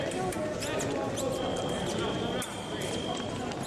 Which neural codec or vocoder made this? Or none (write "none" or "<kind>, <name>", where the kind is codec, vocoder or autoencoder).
none